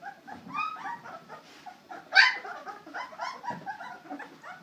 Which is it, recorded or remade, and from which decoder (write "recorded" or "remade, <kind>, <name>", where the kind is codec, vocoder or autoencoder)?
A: recorded